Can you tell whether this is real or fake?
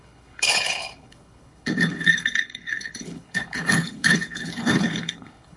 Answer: fake